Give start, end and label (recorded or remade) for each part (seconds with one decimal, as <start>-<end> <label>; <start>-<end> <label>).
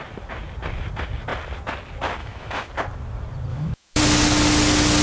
0.0-2.2 recorded; 2.2-2.7 remade; 2.7-3.5 recorded; 3.5-4.0 remade; 4.0-5.0 recorded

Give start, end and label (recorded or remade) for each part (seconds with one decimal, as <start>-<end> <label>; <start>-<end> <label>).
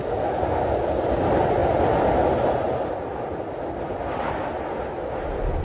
0.0-5.6 recorded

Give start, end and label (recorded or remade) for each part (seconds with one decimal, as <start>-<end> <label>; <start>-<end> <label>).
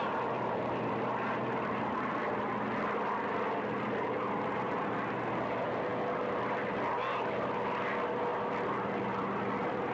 0.0-9.9 recorded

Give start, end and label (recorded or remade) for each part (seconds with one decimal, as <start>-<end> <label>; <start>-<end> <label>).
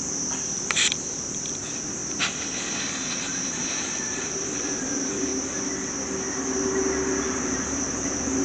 0.0-2.0 remade; 2.0-3.5 recorded; 3.5-5.3 remade; 5.3-7.2 recorded; 7.2-8.4 remade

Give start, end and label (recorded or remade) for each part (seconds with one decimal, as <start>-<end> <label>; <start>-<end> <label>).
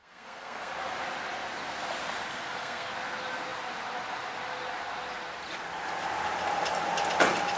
0.0-0.7 remade; 0.7-2.3 recorded; 2.3-2.9 remade; 2.9-7.6 recorded